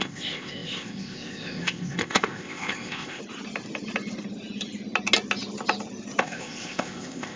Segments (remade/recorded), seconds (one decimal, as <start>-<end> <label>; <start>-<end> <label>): 0.0-3.2 remade; 3.2-6.2 recorded; 6.2-7.4 remade